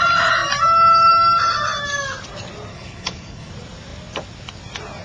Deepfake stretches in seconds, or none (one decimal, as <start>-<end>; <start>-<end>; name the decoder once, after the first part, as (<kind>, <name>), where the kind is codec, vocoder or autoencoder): 2.7-3.5 (codec, HILCodec)